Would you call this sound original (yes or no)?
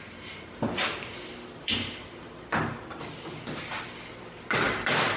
no